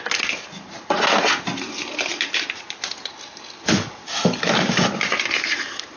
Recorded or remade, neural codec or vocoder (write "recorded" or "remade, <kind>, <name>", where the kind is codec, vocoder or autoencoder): recorded